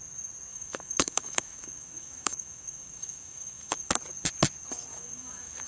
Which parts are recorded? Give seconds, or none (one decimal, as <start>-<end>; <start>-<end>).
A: 0.0-0.5; 3.9-4.9